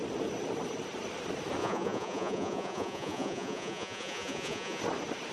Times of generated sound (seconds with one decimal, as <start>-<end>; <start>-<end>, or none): 1.6-4.8